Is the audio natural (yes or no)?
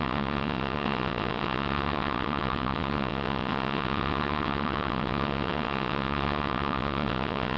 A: no